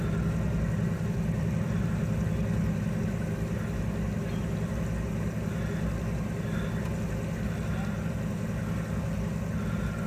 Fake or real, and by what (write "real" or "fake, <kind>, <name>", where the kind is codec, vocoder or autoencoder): real